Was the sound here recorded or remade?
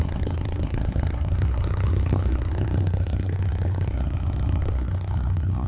remade